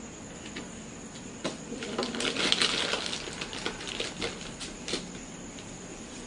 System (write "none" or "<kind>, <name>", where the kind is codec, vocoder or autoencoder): none